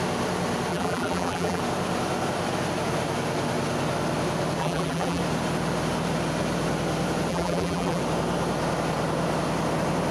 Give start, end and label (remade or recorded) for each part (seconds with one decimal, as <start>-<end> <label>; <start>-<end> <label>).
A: 0.0-0.7 recorded; 0.7-1.6 remade; 1.6-4.6 recorded; 4.6-5.2 remade; 5.2-7.3 recorded; 7.3-8.0 remade; 8.0-10.1 recorded